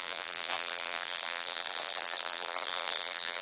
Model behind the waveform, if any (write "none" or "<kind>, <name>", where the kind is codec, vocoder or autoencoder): vocoder, BigVGAN v2